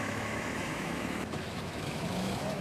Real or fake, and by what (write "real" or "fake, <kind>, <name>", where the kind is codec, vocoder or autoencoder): fake, autoencoder, DAC-VAE